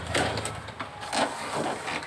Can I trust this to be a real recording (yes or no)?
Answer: yes